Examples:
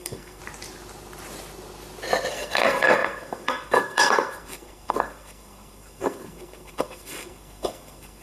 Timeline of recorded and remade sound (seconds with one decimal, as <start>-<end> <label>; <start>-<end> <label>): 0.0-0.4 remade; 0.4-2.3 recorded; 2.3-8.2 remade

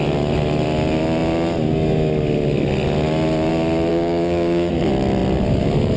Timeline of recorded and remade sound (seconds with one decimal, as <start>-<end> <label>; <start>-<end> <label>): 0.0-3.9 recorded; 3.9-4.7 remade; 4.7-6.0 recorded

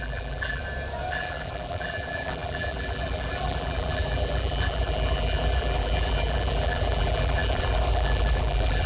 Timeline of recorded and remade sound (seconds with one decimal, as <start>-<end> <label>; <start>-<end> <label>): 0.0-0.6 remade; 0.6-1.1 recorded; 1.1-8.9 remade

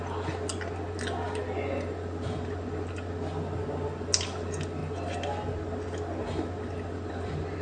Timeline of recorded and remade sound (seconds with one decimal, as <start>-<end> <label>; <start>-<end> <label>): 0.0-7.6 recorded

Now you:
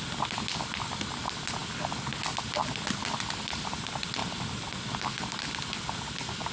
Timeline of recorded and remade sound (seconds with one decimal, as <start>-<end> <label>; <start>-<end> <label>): 0.0-6.5 recorded

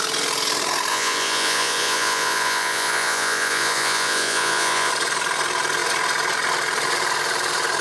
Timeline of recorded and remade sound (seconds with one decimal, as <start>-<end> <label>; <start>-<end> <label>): 0.0-0.9 recorded; 0.9-4.9 remade; 4.9-7.8 recorded

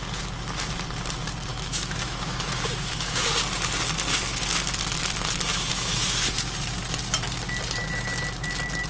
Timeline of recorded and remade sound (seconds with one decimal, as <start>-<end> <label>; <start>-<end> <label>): 0.0-1.5 recorded; 1.5-3.2 remade; 3.2-5.5 recorded; 5.5-6.4 remade; 6.4-8.9 recorded

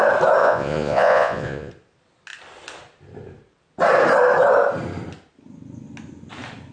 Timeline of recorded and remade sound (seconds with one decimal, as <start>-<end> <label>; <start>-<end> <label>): 0.0-0.4 recorded; 0.4-1.7 remade; 1.7-6.7 recorded